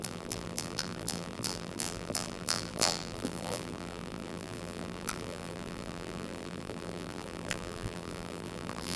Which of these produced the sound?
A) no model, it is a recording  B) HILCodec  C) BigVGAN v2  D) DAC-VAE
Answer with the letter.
C